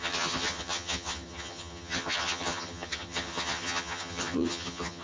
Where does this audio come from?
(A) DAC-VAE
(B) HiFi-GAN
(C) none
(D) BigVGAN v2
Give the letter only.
B